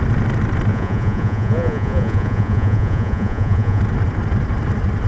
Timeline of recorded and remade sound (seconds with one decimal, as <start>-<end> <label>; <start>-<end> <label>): 0.0-0.7 recorded; 0.7-3.8 remade; 3.8-5.1 recorded